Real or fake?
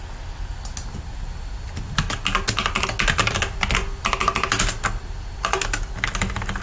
real